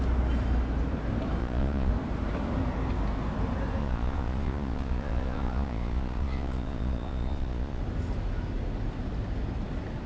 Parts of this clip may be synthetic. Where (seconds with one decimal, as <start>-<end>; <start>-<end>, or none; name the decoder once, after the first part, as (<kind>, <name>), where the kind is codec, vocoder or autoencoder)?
1.4-1.9 (vocoder, Vocos); 3.8-7.8